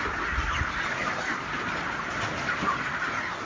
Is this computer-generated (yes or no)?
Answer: no